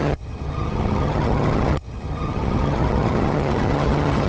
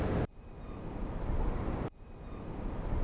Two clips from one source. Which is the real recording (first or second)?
second